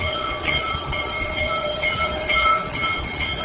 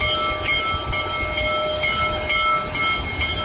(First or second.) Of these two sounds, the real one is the second